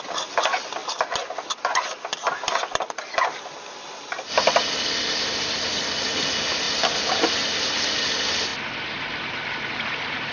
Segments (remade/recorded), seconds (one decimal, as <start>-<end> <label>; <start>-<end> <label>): 0.0-0.8 recorded; 0.8-1.6 remade; 1.6-10.3 recorded